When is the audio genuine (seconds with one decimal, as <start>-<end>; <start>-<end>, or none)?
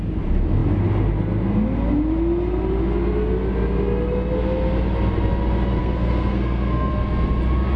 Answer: 0.0-5.8; 6.9-7.8